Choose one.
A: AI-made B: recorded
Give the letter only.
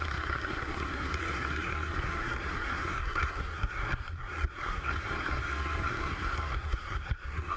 A